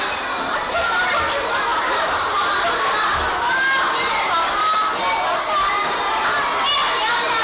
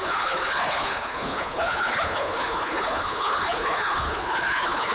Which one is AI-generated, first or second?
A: second